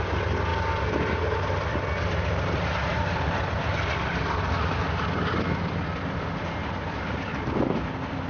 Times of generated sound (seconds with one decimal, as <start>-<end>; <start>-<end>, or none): 2.9-4.6